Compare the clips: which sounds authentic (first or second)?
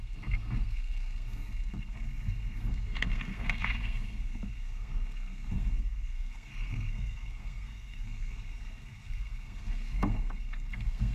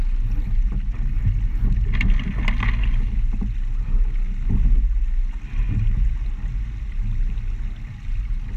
second